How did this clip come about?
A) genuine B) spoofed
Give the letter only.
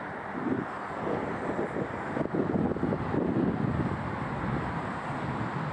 A